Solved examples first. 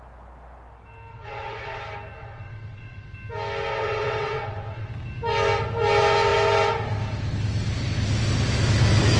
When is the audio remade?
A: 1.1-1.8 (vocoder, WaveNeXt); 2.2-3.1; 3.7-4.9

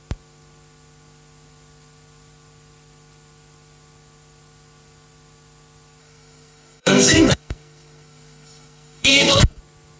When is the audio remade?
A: 6.0-9.6 (codec, SNAC)

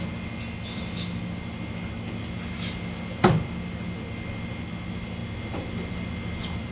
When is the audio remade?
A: none

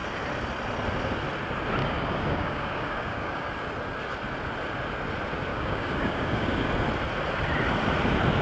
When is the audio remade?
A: 1.8-3.5 (codec, DAC); 5.5-6.7

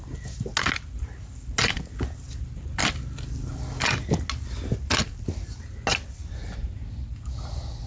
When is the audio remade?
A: none

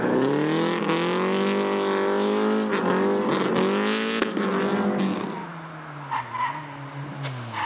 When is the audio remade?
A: none

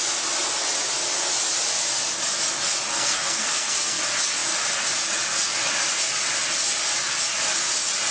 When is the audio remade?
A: 2.9-4.0 (codec, SNAC)

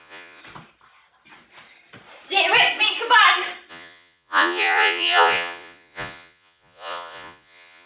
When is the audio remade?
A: 0.0-0.4 (vocoder, Vocos); 3.7-7.9